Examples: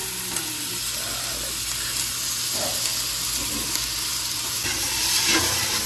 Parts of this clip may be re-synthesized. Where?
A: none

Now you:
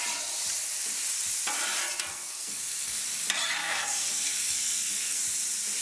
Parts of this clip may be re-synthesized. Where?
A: 2.1-3.0 (codec, SNAC); 3.6-5.2

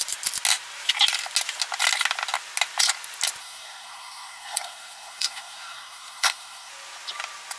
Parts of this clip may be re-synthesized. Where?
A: 3.4-6.7 (codec, SNAC)

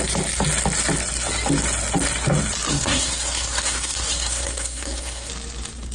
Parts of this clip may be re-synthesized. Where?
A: 2.7-5.3 (codec, SNAC)

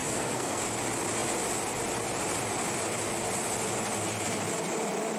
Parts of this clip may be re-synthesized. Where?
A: 0.0-0.6 (codec, SNAC)

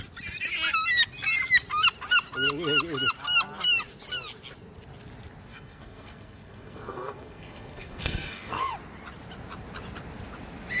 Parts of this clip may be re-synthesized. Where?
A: 5.5-8.7 (codec, SNAC)

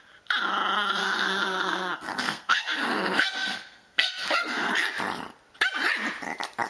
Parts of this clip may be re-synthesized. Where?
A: 1.0-4.7 (codec, SNAC)

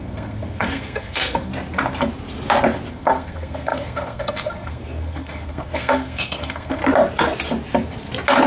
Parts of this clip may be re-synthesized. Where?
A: 0.0-1.5 (codec, SNAC); 2.9-6.8